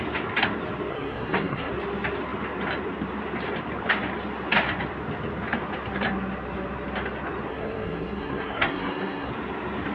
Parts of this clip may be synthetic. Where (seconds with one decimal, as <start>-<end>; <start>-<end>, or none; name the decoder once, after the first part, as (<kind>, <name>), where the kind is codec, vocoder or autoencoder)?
0.9-1.7 (codec, SNAC); 7.5-9.3